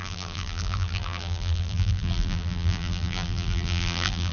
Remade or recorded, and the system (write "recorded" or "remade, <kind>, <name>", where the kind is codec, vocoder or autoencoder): remade, vocoder, BigVGAN v2